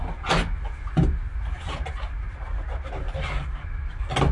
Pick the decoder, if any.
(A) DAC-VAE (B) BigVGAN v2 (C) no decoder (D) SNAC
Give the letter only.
C